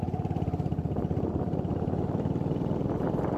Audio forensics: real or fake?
real